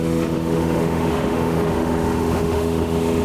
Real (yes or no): no